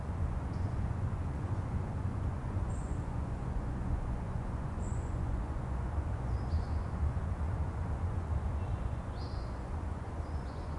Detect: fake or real fake